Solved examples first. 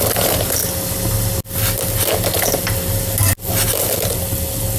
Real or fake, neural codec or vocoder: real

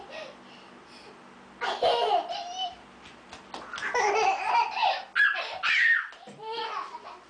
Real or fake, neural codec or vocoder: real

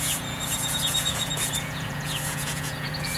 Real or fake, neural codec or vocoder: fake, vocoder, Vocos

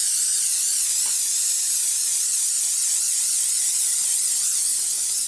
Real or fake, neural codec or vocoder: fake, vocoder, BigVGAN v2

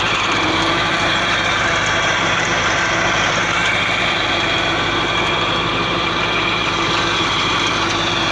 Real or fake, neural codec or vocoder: fake, vocoder, BigVGAN v2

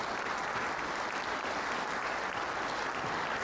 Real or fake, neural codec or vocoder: real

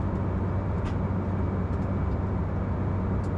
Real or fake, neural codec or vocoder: real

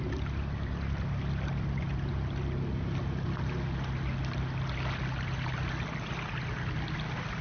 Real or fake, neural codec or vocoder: real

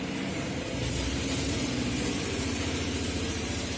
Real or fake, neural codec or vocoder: fake, vocoder, BigVGAN v2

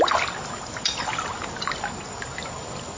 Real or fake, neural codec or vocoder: real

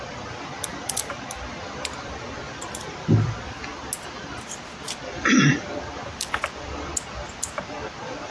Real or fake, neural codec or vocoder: real